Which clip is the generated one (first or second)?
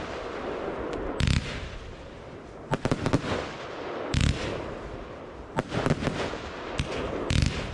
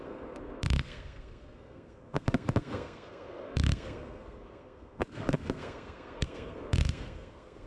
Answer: second